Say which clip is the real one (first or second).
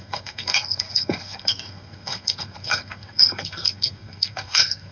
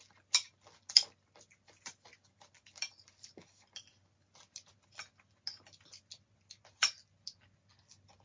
second